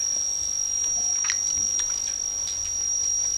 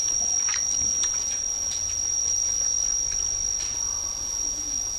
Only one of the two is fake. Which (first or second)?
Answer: second